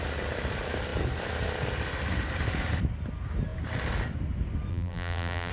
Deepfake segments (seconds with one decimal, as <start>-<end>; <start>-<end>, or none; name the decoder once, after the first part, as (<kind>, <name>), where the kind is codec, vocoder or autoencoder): 4.7-5.5 (vocoder, BigVGAN v2)